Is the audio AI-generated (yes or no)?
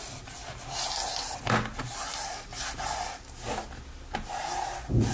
no